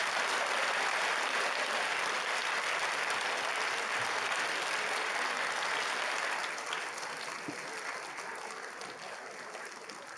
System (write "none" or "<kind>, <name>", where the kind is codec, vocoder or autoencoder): none